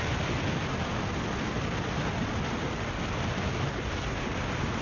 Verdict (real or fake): real